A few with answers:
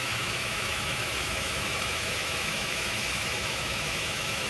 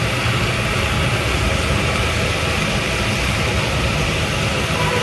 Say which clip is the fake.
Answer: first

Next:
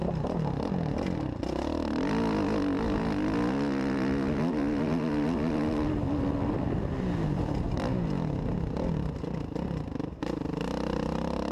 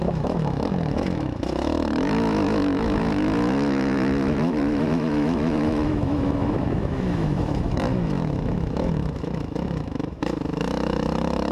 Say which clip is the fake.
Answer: second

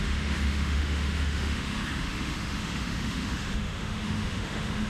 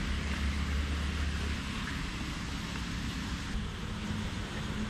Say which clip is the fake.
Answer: first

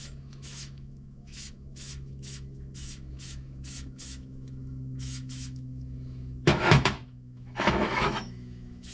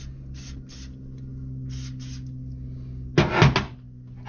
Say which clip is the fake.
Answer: first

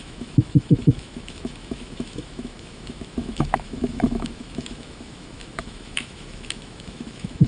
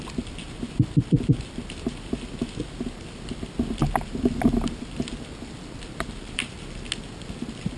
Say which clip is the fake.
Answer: first